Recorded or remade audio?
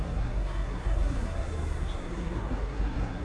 remade